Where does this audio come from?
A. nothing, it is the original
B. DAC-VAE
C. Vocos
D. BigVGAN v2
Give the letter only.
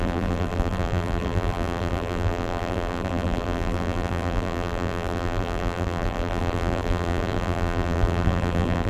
D